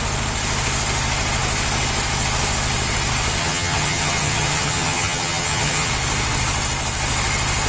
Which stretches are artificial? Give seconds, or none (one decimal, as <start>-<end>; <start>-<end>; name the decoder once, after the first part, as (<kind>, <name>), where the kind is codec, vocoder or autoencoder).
3.4-5.9 (vocoder, HiFi-GAN)